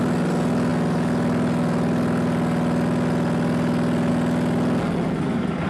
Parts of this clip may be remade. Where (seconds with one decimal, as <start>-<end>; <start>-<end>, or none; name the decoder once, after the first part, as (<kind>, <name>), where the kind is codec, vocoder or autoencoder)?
none

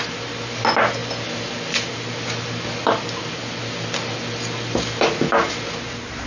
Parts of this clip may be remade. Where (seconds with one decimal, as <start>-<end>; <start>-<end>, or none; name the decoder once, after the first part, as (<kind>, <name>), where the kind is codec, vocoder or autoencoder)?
none

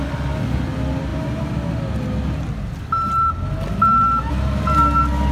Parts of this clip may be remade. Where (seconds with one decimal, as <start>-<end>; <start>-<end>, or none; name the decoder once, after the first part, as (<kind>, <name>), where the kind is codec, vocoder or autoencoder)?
none

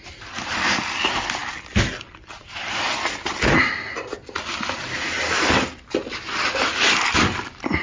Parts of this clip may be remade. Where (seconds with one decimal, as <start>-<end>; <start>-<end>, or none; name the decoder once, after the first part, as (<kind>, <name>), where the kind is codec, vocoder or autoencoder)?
none

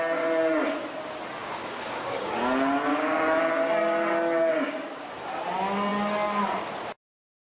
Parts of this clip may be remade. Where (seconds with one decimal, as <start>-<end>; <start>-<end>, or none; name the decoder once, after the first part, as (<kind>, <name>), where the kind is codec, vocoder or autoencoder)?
1.4-2.4 (codec, DAC); 2.9-3.4; 4.5-5.1

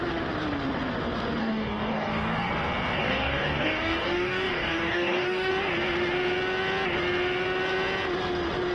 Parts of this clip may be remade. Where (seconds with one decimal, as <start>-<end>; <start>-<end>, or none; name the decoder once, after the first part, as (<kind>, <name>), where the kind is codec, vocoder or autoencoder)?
1.4-2.5 (codec, DAC); 3.0-5.5

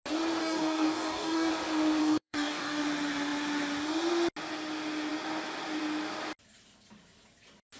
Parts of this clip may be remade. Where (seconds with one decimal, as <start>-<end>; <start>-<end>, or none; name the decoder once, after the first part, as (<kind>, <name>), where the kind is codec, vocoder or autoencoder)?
0.4-1.5 (codec, DAC); 2.0-2.8